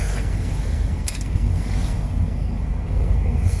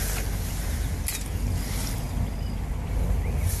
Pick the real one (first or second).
second